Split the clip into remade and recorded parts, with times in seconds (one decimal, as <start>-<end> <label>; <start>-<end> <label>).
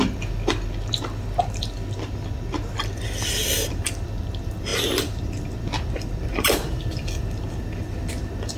0.0-3.4 recorded; 3.4-4.2 remade; 4.2-4.7 recorded; 4.7-8.1 remade; 8.1-8.6 recorded